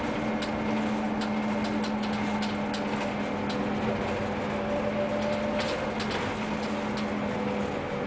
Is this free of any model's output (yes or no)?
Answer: yes